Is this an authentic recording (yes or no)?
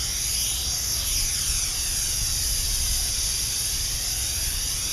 yes